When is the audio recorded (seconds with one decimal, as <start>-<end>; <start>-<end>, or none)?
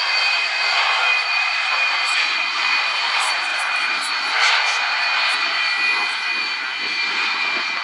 0.0-1.2; 2.5-7.8